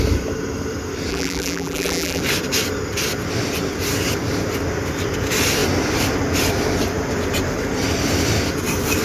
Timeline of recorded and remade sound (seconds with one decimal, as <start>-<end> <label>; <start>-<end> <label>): 0.0-1.1 recorded; 1.1-2.2 remade; 2.2-9.0 recorded